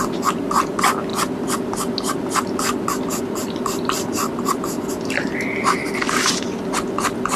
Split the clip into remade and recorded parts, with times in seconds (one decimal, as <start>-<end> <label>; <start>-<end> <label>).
0.0-7.4 recorded